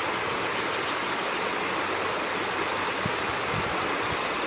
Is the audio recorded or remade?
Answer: recorded